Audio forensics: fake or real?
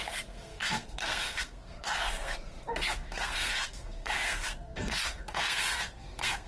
fake